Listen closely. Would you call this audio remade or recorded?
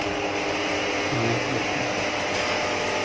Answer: recorded